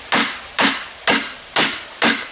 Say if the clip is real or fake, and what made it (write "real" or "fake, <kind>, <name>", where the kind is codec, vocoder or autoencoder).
real